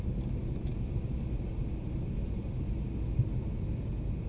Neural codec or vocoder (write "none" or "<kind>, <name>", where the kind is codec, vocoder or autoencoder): none